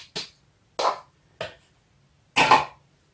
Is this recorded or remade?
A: recorded